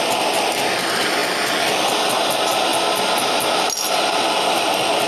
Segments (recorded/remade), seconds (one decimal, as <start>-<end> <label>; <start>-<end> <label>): 0.0-5.1 recorded